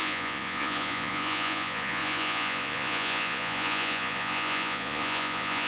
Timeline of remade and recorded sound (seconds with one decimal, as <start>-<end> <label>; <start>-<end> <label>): 0.0-5.7 remade